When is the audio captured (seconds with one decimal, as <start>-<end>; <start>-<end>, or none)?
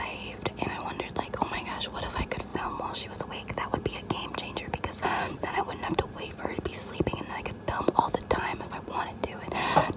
0.0-2.5; 3.1-4.6; 7.1-8.5; 9.5-10.0